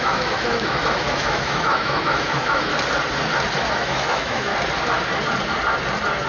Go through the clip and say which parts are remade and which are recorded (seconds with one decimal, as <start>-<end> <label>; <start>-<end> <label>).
0.0-2.7 remade; 2.7-3.7 recorded; 3.7-4.5 remade; 4.5-6.3 recorded